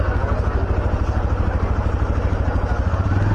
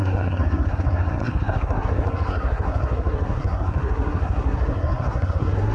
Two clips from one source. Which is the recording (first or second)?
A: first